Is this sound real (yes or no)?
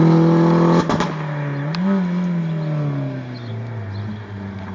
yes